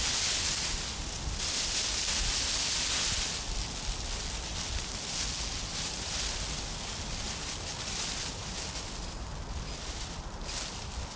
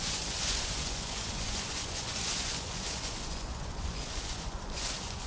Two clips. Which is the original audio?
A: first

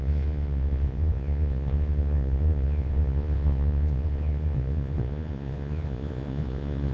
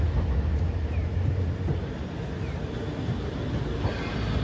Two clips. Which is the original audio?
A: second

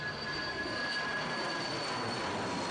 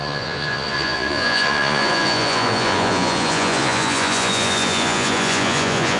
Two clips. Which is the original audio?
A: first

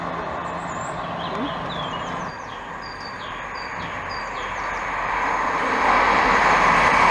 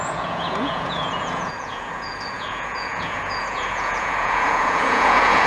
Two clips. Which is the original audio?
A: first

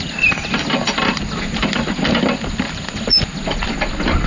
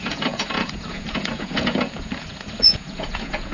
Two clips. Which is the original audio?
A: first